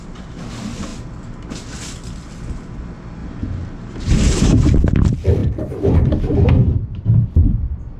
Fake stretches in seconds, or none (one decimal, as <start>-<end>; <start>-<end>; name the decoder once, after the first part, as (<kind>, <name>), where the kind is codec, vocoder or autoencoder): 3.2-4.7 (vocoder, BigVGAN v2); 6.6-7.6